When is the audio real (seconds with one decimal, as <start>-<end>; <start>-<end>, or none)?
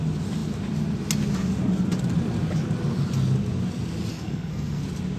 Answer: 0.0-4.1; 4.8-5.2